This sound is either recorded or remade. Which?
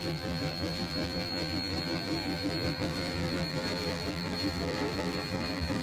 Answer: remade